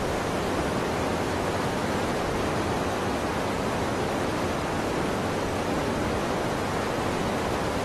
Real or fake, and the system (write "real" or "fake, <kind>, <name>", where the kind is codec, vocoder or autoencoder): real